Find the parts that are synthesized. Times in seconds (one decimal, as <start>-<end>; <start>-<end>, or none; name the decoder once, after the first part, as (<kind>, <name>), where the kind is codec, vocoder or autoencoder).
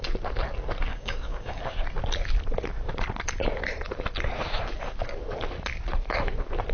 0.9-1.6 (codec, DAC)